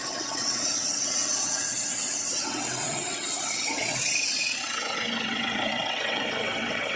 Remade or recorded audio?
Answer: remade